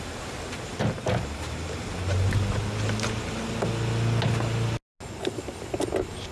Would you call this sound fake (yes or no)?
no